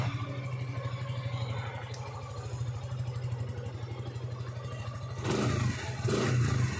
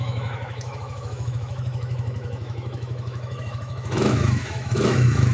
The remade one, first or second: second